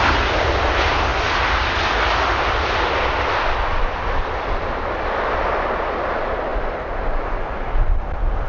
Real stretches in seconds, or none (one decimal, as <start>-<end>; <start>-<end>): 0.0-8.5